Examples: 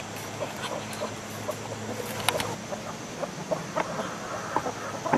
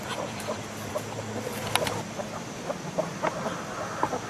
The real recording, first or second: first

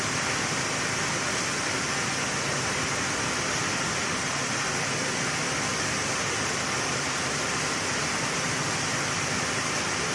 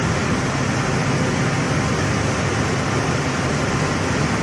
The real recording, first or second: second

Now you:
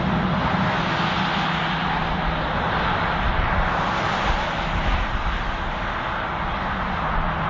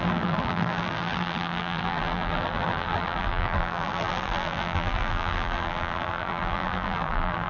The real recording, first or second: first